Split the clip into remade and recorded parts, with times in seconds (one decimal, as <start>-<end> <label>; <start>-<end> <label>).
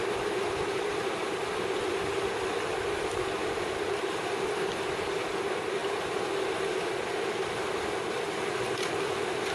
0.0-9.5 recorded